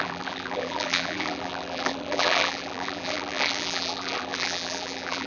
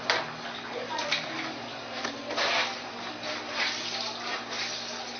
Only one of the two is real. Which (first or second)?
second